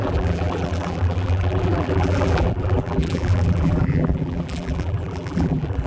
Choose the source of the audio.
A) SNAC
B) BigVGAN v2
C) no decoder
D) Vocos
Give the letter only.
B